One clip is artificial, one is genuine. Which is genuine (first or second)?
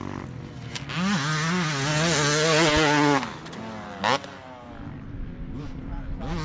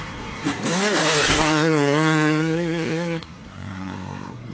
first